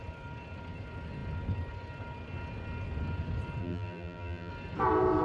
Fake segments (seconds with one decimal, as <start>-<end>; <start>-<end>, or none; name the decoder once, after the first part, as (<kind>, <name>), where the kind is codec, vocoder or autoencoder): 3.6-4.5 (vocoder, BigVGAN v2)